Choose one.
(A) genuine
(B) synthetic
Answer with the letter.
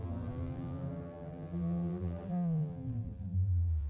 B